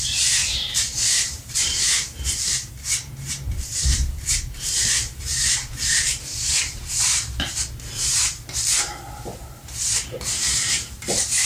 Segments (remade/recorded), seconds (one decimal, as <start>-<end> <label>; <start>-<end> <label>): 0.0-11.5 remade